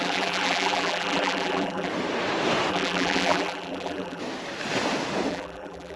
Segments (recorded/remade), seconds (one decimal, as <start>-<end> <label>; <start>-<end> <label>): 0.0-1.9 remade; 1.9-2.7 recorded; 2.7-4.2 remade; 4.2-5.3 recorded; 5.3-6.0 remade